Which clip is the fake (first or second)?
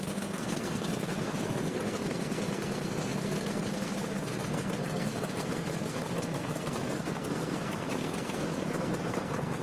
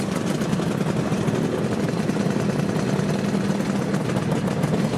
first